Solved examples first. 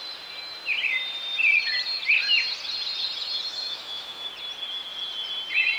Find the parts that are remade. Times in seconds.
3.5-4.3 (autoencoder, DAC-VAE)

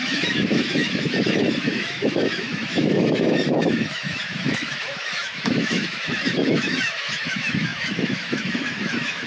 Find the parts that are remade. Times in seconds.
0.0-9.3 (autoencoder, DAC-VAE)

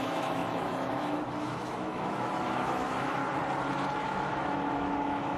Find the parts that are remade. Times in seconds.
0.0-3.2 (autoencoder, DAC-VAE); 4.0-5.4

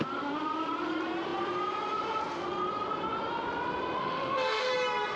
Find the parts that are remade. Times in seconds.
4.0-4.7 (autoencoder, DAC-VAE)

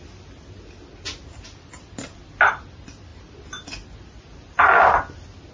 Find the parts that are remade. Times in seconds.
none